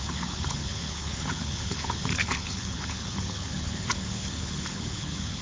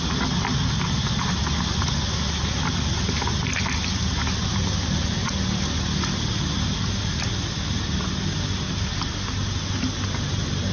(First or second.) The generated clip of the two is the first